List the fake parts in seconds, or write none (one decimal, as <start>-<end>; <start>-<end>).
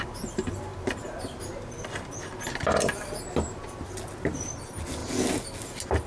none